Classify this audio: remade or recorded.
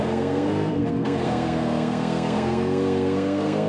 remade